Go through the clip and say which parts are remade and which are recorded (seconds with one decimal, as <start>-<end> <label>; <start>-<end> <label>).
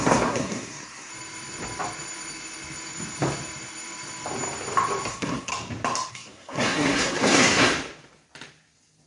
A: 0.0-1.1 remade; 1.1-5.1 recorded; 5.1-5.5 remade; 5.5-6.1 recorded; 6.1-7.7 remade; 7.7-9.1 recorded